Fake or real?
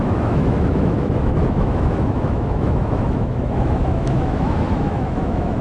fake